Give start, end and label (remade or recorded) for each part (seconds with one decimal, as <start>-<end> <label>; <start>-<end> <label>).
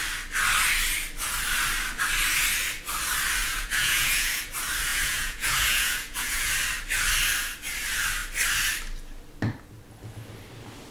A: 0.0-3.4 recorded; 3.4-4.4 remade; 4.4-4.9 recorded; 4.9-6.5 remade; 6.5-10.9 recorded